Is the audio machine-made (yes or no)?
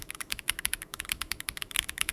yes